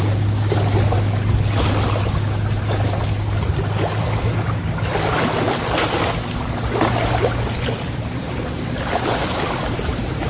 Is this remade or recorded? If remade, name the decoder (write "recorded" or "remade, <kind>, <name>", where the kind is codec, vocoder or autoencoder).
recorded